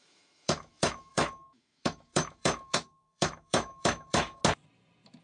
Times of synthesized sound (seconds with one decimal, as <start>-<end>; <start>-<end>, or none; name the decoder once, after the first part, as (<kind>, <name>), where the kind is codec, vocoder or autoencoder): 0.0-4.4 (autoencoder, DAC-VAE)